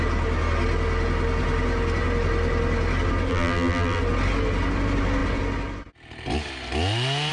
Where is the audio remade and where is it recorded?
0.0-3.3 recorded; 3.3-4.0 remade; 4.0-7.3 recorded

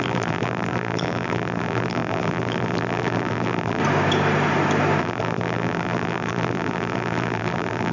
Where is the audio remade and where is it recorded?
0.0-3.8 remade; 3.8-5.0 recorded; 5.0-7.9 remade

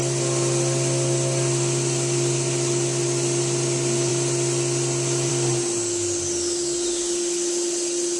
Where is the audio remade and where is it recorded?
0.0-8.2 recorded

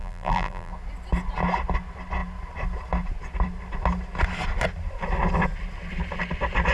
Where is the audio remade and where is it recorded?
0.0-0.7 remade; 0.7-6.7 recorded

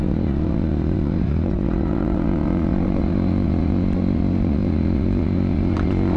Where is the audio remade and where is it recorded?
0.0-6.2 remade

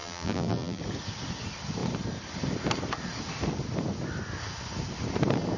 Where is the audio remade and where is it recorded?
0.0-0.8 remade; 0.8-5.6 recorded

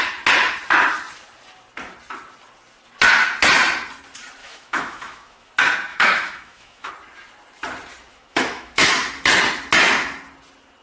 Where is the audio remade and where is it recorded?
0.0-4.4 recorded; 4.4-5.5 remade; 5.5-5.9 recorded; 5.9-6.9 remade; 6.9-8.1 recorded; 8.1-8.9 remade; 8.9-10.8 recorded

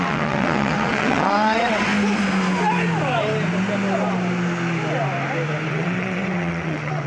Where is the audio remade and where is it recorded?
0.0-1.9 remade; 1.9-5.7 recorded; 5.7-7.1 remade